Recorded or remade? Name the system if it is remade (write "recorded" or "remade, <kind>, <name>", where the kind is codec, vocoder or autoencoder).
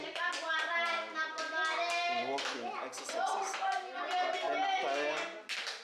recorded